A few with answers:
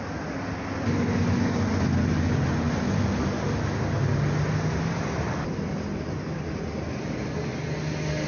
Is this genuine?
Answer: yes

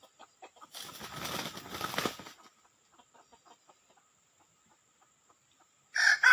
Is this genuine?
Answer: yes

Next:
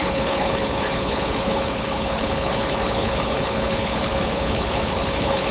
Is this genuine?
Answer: no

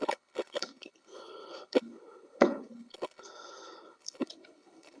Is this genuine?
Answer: no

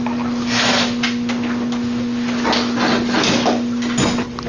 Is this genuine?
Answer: yes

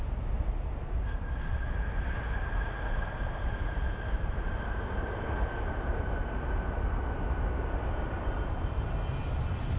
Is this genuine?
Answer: yes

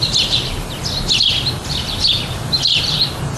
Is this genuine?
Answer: yes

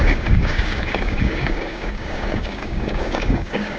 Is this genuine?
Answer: no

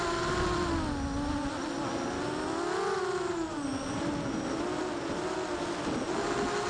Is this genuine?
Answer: yes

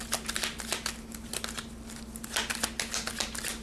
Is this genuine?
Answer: yes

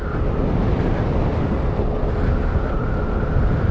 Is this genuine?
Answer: yes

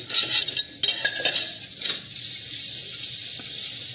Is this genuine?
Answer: yes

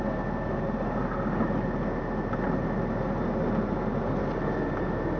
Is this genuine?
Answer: yes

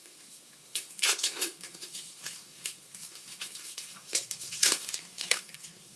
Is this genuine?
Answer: no